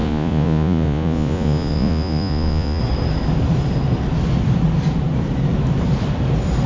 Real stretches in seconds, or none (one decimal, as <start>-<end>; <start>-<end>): 2.8-6.7